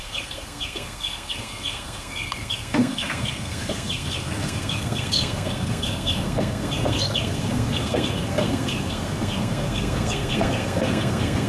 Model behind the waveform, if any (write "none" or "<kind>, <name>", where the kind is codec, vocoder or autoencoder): codec, SNAC